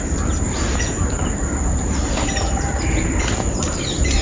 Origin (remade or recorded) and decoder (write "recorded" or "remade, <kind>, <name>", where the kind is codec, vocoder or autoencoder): remade, vocoder, BigVGAN v2